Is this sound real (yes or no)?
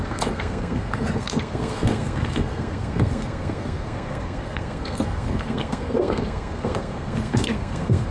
no